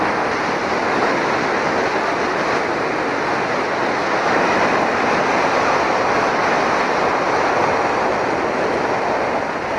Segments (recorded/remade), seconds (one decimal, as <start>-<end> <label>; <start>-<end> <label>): 0.0-4.0 recorded; 4.0-4.6 remade; 4.6-9.8 recorded